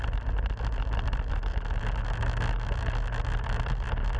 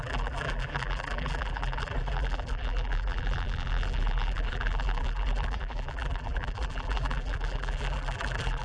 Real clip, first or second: first